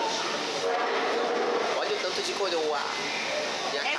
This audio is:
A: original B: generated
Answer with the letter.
A